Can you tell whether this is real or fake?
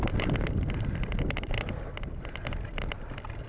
real